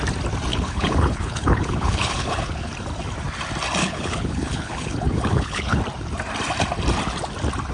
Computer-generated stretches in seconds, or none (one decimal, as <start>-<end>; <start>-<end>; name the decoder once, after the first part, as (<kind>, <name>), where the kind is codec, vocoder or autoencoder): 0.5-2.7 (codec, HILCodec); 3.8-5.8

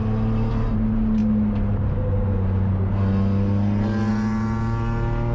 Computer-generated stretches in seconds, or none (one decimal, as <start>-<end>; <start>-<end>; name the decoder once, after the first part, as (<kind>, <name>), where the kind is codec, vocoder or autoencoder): none

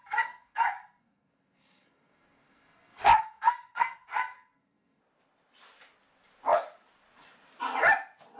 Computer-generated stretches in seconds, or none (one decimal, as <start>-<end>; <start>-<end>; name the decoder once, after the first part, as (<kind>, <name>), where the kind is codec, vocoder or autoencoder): 0.0-5.0 (codec, SNAC)

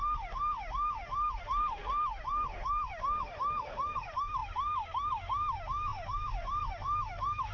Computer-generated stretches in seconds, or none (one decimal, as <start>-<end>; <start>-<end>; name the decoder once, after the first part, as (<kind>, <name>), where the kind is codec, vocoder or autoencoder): 0.0-7.5 (autoencoder, DAC-VAE)

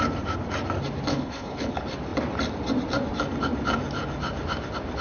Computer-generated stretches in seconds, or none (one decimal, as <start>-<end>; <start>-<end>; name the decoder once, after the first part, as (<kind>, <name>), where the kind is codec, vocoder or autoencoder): 1.1-1.7 (codec, HILCodec)